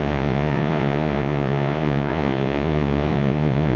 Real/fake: fake